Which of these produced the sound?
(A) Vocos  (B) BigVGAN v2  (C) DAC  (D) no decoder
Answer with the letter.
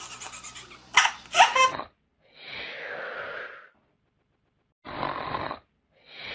D